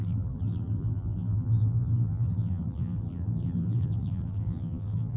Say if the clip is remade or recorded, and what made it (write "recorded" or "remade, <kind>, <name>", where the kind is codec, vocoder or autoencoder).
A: remade, vocoder, BigVGAN v2